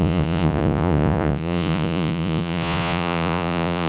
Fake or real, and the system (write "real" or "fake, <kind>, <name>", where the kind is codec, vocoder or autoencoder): fake, vocoder, Vocos